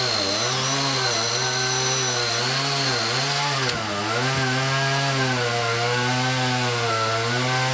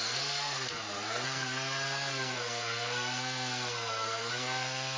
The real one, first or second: first